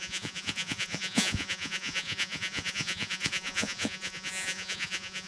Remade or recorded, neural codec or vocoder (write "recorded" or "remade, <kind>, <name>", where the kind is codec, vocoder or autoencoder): remade, vocoder, Vocos